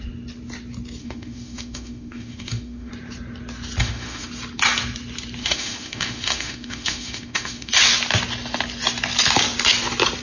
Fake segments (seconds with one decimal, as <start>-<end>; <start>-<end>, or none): 1.0-2.9; 3.8-4.3; 5.4-7.7